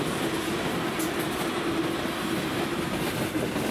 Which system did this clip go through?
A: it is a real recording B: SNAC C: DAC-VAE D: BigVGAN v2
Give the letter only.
A